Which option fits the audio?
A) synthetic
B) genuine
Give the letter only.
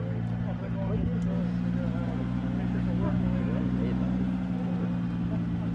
B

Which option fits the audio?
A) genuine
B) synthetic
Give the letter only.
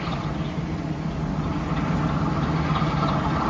A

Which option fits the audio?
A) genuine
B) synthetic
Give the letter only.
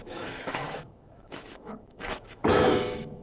B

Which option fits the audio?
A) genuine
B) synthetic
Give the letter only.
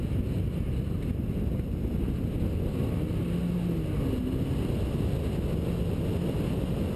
A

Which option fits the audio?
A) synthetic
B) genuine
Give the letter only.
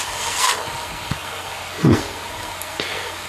A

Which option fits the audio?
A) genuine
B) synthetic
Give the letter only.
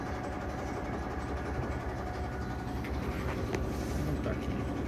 A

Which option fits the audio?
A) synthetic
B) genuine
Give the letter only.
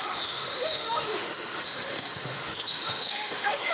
A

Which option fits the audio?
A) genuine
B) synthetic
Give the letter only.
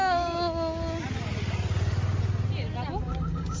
A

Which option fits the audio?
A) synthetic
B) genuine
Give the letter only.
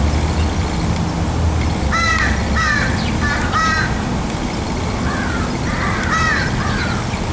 B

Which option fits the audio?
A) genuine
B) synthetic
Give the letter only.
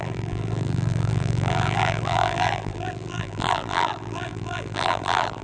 B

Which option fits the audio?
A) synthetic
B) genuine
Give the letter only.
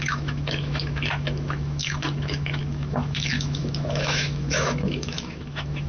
A